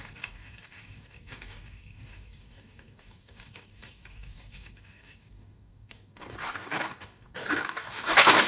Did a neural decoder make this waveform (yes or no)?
yes